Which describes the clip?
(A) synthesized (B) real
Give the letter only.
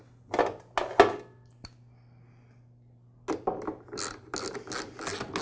B